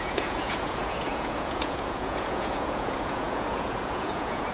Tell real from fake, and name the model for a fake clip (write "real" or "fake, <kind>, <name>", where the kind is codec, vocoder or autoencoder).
fake, vocoder, Vocos